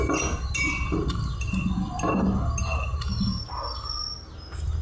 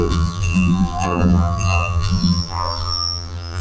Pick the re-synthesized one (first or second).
second